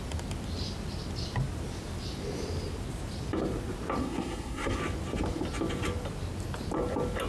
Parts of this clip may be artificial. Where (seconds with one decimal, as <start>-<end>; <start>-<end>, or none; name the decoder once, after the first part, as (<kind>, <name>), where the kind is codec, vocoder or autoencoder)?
4.0-4.8 (codec, SNAC)